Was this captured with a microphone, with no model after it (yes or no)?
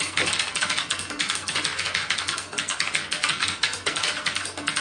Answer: no